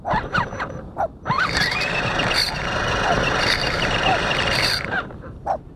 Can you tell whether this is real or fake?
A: fake